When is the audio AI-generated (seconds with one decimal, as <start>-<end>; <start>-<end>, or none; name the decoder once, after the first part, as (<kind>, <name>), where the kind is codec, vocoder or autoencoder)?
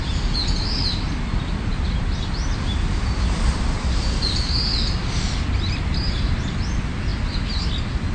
none